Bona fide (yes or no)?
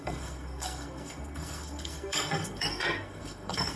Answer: no